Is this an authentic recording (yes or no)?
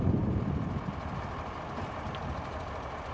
yes